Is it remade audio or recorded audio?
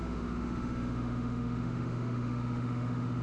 remade